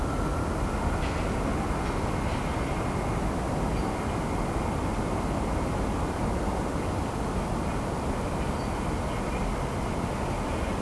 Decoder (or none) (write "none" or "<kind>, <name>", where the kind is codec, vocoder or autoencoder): none